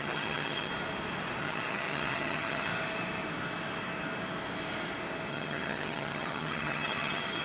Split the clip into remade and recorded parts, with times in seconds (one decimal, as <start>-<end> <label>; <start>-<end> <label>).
0.0-0.7 remade; 0.7-1.4 recorded; 1.4-2.7 remade; 2.7-5.3 recorded; 5.3-7.4 remade